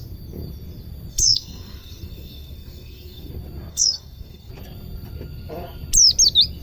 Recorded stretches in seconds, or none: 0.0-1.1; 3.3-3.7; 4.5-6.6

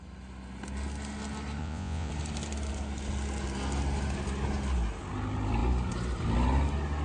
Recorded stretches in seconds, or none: 0.0-1.6; 2.1-7.0

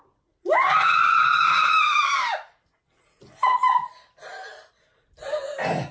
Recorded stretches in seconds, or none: 0.0-5.9

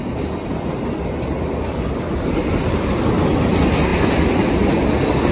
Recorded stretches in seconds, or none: 0.0-5.3

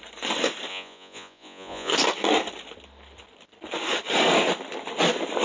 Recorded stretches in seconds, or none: 0.0-0.7; 1.9-5.4

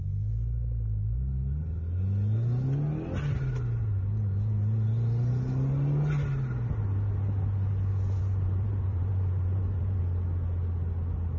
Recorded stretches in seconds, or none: 0.0-8.2; 10.0-11.4